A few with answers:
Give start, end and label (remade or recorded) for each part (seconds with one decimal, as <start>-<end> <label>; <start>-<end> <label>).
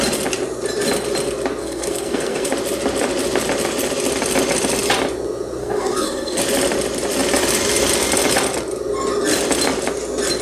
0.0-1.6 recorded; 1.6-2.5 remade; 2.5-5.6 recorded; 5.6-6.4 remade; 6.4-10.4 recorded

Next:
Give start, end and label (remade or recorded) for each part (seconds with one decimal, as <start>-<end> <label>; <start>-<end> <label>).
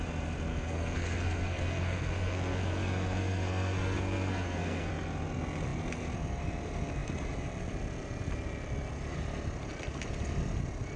0.0-0.5 recorded; 0.5-4.9 remade; 4.9-11.0 recorded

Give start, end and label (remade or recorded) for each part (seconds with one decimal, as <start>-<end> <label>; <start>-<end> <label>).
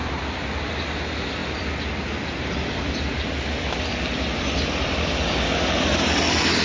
0.0-1.4 recorded; 1.4-5.4 remade; 5.4-6.6 recorded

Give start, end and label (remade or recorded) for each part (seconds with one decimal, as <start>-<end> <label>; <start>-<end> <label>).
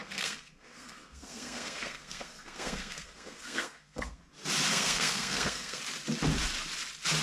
0.0-4.2 remade; 4.2-4.7 recorded; 4.7-5.8 remade; 5.8-7.2 recorded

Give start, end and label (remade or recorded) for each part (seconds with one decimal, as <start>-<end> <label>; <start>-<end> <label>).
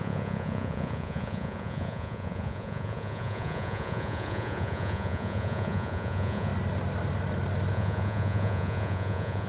0.0-6.5 remade; 6.5-7.7 recorded; 7.7-9.5 remade